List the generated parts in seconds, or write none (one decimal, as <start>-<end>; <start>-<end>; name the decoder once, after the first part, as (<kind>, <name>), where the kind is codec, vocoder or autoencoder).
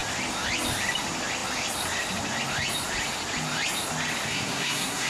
4.3-5.1 (codec, SNAC)